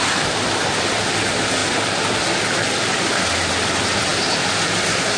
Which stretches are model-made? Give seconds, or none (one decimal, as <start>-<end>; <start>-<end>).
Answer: none

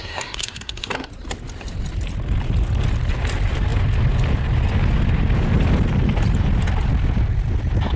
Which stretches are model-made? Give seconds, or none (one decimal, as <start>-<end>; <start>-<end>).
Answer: 0.0-1.1

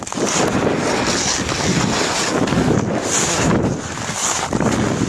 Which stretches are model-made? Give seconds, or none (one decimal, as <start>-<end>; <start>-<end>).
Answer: none

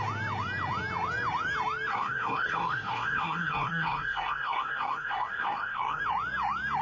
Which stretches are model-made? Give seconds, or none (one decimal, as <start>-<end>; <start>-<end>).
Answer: 1.9-6.0

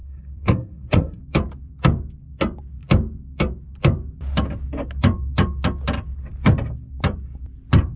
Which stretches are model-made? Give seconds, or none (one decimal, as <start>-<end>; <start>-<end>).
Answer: 0.0-1.2

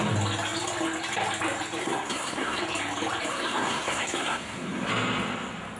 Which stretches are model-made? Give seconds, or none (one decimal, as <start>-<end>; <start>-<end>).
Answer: 1.8-2.6; 3.3-4.9

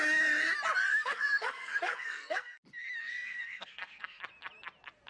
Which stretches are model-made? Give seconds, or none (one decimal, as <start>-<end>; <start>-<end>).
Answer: 0.9-2.6; 3.0-4.2